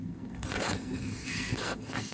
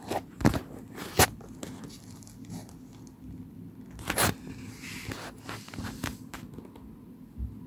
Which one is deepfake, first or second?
first